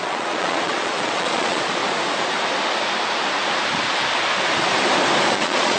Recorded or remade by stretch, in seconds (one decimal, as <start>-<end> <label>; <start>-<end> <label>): 0.0-1.8 remade; 1.8-5.3 recorded; 5.3-5.8 remade